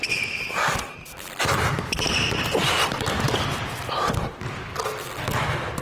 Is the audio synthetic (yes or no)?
no